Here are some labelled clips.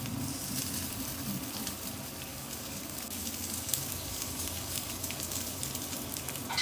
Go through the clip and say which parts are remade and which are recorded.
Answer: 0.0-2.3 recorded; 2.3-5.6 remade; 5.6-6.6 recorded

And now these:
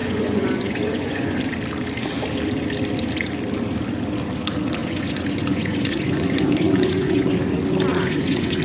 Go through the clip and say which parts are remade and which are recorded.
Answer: 0.0-1.4 remade; 1.4-4.8 recorded; 4.8-7.3 remade; 7.3-7.9 recorded; 7.9-8.6 remade

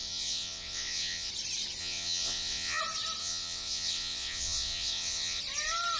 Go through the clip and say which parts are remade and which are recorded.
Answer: 0.0-1.3 remade; 1.3-1.8 recorded; 1.8-2.8 remade; 2.8-3.2 recorded; 3.2-5.4 remade; 5.4-6.0 recorded

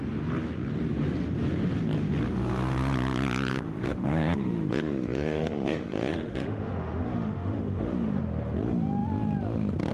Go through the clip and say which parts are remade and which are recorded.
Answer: 0.0-3.5 recorded; 3.5-8.2 remade; 8.2-9.9 recorded

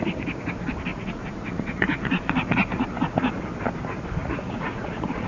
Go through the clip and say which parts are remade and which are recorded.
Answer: 0.0-0.9 recorded; 0.9-3.4 remade; 3.4-4.2 recorded; 4.2-5.3 remade

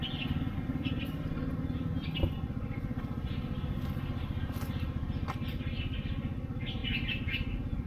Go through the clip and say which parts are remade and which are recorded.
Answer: 0.0-7.9 recorded

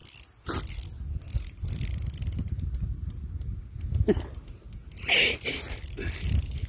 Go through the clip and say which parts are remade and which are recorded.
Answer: 0.0-6.7 recorded